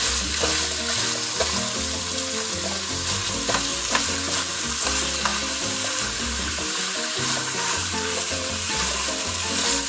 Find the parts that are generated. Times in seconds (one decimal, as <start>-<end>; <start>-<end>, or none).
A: 3.7-4.5; 5.3-9.1